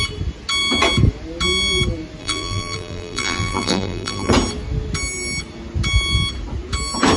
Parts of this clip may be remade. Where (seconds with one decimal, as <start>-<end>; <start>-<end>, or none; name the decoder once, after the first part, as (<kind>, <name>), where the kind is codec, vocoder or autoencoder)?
2.2-4.3 (vocoder, BigVGAN v2)